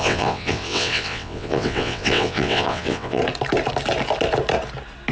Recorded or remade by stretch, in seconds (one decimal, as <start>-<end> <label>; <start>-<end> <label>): 0.0-3.2 remade; 3.2-5.1 recorded